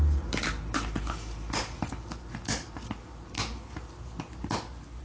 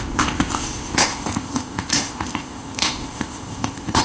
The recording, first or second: first